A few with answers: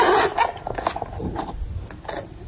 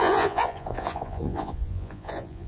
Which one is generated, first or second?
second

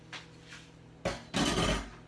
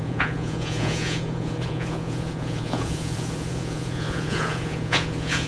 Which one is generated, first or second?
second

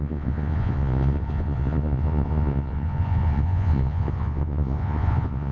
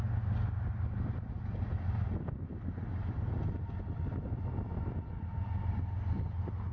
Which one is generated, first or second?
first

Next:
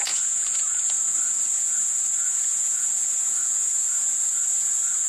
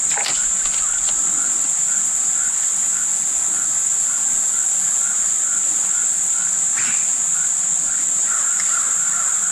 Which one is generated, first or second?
first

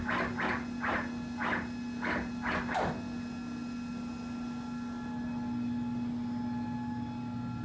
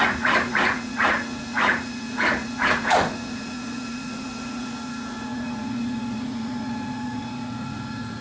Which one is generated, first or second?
second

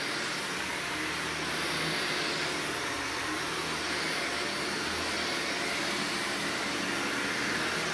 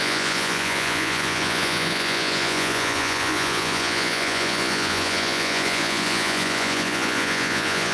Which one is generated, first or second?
second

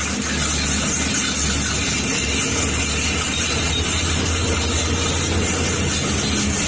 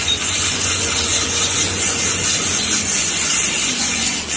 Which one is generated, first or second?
second